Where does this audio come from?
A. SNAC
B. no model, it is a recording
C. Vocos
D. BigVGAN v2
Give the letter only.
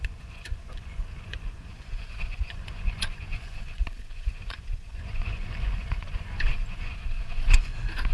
C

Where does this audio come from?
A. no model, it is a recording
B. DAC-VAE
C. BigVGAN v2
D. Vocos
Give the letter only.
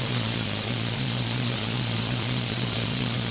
D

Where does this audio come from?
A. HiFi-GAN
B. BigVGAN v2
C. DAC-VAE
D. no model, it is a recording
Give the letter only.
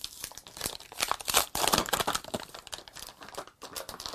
D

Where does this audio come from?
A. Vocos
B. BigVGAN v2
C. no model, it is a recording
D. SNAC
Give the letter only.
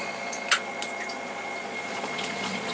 A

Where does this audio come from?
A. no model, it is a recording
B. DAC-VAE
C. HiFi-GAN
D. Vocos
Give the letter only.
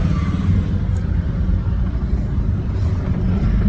A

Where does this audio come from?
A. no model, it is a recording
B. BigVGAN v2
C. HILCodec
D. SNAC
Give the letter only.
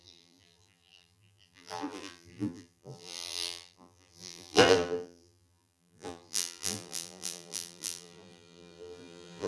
B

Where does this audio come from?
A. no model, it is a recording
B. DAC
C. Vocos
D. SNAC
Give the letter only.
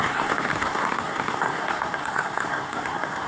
D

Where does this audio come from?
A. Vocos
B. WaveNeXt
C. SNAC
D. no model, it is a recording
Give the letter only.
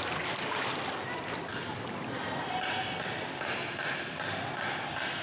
D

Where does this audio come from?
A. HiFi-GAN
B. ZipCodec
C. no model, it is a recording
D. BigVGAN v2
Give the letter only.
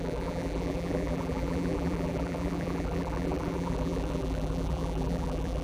D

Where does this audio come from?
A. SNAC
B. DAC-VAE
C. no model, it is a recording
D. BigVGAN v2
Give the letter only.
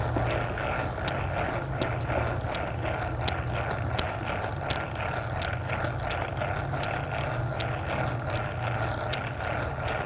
C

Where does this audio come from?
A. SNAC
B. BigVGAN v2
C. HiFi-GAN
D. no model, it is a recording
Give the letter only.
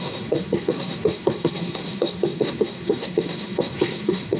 A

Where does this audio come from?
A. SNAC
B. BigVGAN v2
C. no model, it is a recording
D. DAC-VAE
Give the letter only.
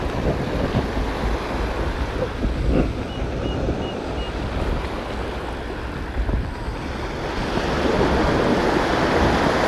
C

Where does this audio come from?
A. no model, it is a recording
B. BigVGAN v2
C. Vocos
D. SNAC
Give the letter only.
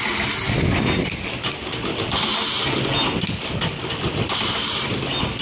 A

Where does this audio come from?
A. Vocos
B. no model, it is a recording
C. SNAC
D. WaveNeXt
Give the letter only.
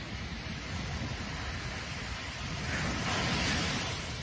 B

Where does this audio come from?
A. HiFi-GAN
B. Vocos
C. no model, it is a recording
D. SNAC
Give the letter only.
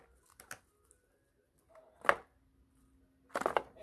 C